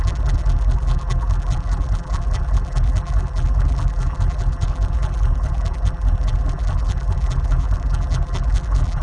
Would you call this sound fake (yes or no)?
yes